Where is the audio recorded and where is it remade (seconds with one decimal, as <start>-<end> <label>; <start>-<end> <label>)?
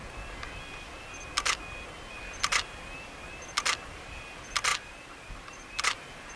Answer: 0.0-4.7 recorded; 4.7-5.8 remade; 5.8-6.4 recorded